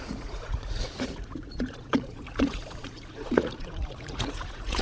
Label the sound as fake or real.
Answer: fake